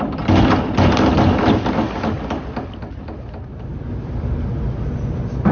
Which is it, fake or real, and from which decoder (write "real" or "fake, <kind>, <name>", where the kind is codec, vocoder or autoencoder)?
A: real